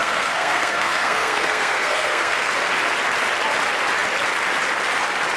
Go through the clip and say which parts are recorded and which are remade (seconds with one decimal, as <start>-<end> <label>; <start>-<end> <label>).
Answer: 0.0-2.5 remade; 2.5-5.4 recorded